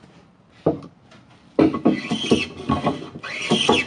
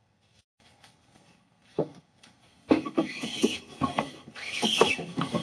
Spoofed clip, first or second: second